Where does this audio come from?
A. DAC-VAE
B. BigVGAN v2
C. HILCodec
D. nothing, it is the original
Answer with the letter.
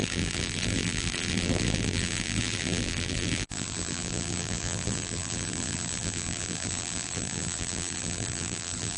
B